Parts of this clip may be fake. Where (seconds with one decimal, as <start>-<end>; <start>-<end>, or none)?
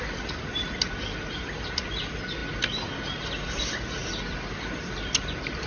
none